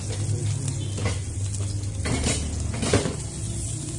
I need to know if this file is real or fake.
real